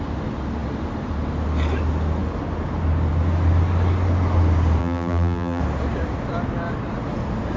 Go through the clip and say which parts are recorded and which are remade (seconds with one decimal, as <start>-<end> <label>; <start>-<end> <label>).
0.0-4.8 recorded; 4.8-5.6 remade; 5.6-7.6 recorded